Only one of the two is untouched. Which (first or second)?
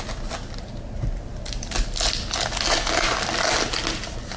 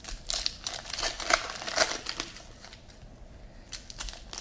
first